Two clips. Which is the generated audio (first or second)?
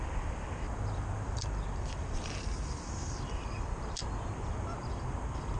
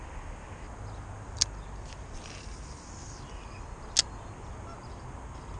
first